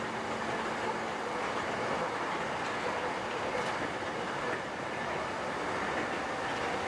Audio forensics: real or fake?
real